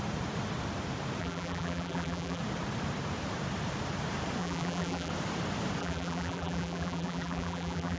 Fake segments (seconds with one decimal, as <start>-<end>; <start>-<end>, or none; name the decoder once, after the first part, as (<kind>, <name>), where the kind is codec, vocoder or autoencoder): 1.2-2.4 (vocoder, BigVGAN v2); 4.4-5.1; 5.8-8.0